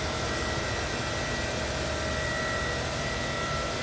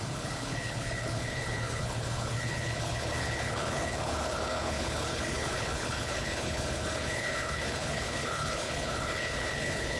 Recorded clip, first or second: first